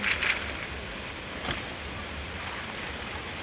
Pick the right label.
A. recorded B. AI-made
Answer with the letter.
A